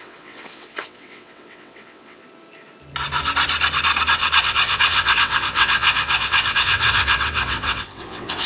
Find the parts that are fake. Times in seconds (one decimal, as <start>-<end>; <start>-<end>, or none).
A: 0.0-2.2; 4.4-8.5